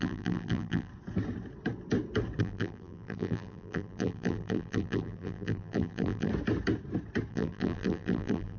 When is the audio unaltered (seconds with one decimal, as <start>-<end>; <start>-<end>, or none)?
0.9-2.4; 6.3-7.3